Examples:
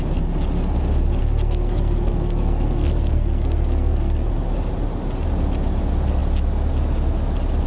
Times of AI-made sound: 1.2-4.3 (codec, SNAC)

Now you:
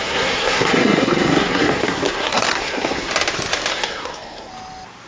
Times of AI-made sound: 0.0-3.1 (codec, SNAC); 3.7-4.5

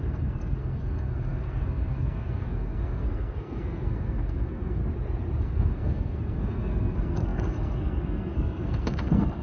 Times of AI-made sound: 0.0-4.8 (codec, SNAC); 5.4-9.4

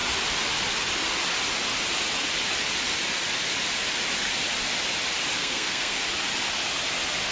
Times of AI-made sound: 5.4-6.0 (codec, SNAC)